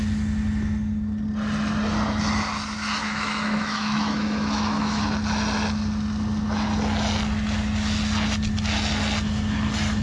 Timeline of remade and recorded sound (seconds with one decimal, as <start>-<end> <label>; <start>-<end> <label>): 0.0-3.0 recorded; 3.0-5.0 remade; 5.0-10.0 recorded